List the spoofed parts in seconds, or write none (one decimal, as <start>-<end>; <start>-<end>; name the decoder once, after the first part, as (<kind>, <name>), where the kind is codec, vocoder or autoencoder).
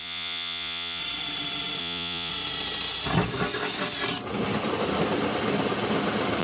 0.0-1.0 (vocoder, Vocos); 1.8-2.3